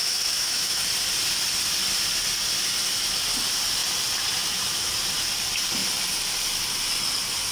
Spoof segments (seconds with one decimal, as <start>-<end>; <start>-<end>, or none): 0.0-0.8